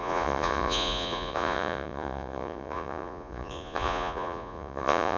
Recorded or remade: remade